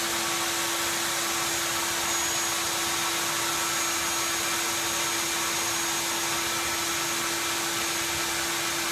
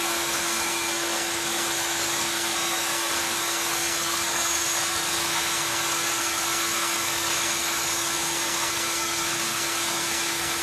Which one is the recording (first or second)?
first